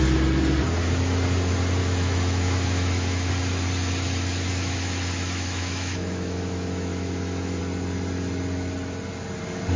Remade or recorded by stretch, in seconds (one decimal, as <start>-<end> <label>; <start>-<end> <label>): 0.0-1.8 recorded; 1.8-3.3 remade; 3.3-4.5 recorded; 4.5-7.6 remade; 7.6-9.8 recorded